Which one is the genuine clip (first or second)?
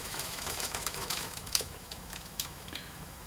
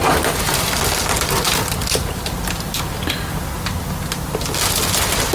second